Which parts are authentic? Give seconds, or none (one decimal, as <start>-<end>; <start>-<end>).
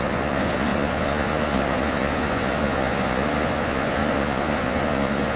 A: none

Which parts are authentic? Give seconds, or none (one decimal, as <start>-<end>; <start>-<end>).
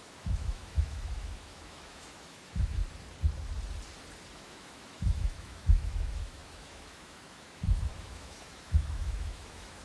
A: 2.8-4.3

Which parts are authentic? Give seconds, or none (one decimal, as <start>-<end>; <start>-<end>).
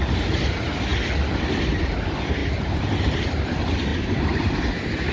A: 0.0-2.4; 3.2-3.9; 4.5-5.1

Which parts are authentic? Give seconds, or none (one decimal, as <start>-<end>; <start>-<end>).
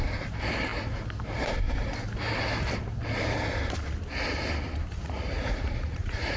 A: 0.0-4.9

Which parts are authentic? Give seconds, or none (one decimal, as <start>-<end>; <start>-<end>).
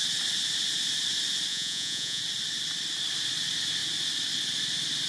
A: 0.0-1.5; 2.2-5.1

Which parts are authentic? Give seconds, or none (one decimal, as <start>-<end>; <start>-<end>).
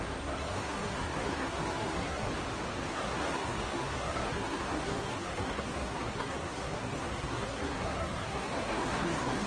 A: 2.3-2.9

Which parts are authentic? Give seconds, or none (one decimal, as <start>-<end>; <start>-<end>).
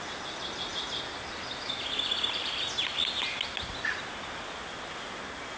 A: 0.0-5.6